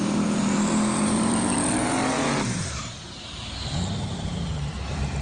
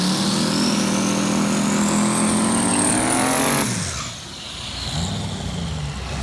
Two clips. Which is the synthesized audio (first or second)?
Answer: first